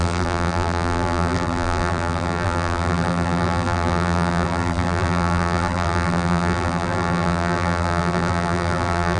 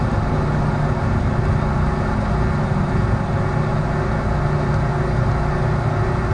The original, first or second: second